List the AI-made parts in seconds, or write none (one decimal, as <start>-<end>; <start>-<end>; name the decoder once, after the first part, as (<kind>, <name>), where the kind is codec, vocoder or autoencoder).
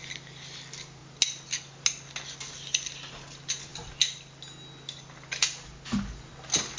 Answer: none